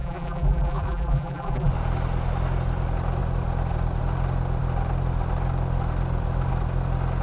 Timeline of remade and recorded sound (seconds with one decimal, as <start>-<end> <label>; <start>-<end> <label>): 0.0-1.7 remade; 1.7-7.2 recorded